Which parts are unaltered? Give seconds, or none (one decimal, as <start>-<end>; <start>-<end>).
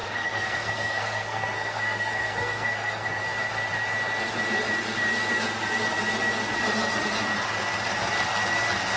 3.2-9.0